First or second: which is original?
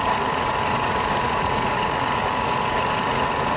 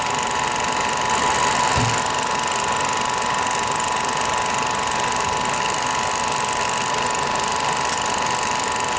second